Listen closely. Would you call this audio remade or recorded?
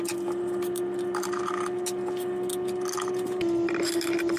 recorded